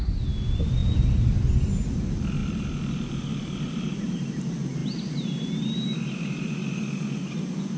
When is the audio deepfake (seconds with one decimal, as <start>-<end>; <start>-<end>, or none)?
none